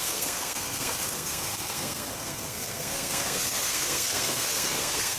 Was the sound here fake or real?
fake